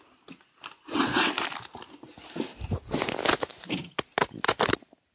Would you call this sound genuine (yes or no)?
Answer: yes